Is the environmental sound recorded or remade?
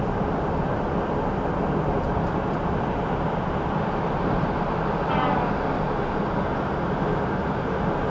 recorded